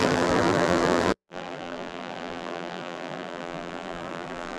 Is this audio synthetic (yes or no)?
yes